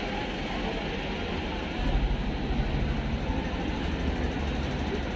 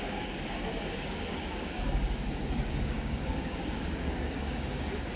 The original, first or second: first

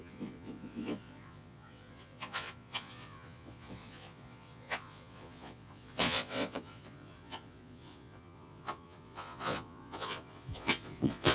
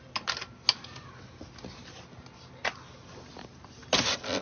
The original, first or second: second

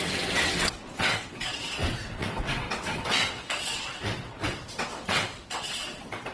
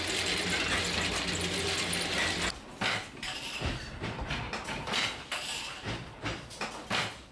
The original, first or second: second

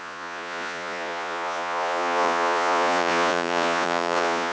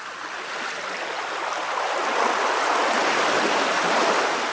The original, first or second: second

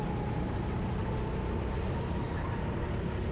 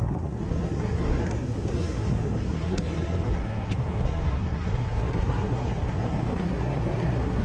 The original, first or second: first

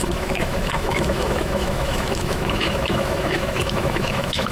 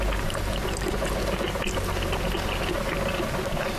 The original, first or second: second